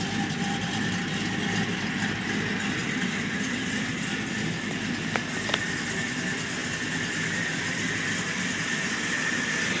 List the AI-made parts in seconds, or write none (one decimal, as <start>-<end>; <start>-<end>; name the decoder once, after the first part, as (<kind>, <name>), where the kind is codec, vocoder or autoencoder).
none